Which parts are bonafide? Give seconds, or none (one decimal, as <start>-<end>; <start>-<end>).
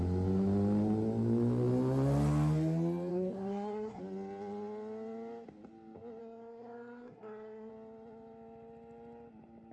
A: 0.0-3.1; 4.0-6.2; 7.7-9.7